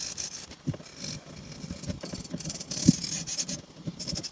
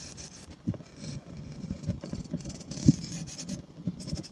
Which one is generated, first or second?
second